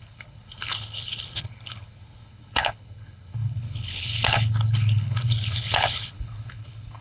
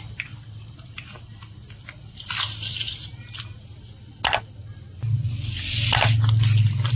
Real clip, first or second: second